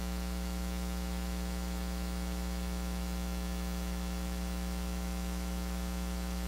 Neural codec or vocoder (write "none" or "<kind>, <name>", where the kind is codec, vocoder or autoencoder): autoencoder, DAC-VAE